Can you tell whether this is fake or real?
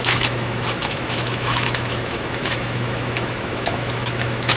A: fake